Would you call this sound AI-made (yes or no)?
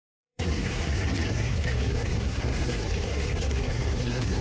yes